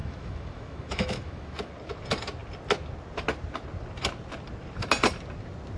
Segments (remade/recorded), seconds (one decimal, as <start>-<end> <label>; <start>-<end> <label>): 0.0-1.7 remade; 1.7-5.8 recorded